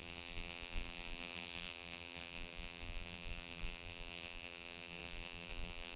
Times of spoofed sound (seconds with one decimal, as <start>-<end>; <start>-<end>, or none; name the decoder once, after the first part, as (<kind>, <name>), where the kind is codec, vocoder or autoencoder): 0.0-6.0 (vocoder, BigVGAN v2)